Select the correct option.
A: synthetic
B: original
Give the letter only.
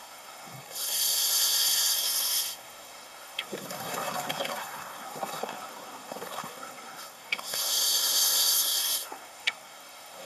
A